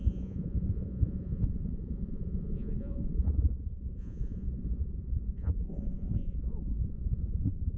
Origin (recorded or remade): remade